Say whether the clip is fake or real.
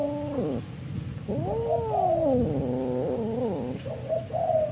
real